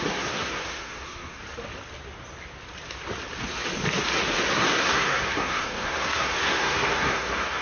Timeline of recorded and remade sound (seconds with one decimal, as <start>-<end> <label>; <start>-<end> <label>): 0.0-1.4 remade; 1.4-4.5 recorded; 4.5-7.6 remade

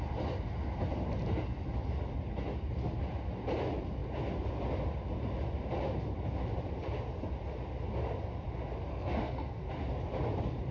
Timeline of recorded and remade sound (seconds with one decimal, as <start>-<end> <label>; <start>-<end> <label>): 0.0-8.9 recorded; 8.9-9.7 remade; 9.7-10.7 recorded

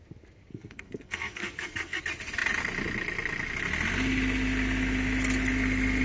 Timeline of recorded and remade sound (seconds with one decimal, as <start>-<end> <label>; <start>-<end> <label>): 0.0-0.5 recorded; 0.5-2.0 remade; 2.0-6.0 recorded

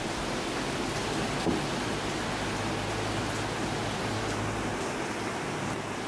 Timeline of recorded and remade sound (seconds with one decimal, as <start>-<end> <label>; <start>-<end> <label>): 0.0-6.1 recorded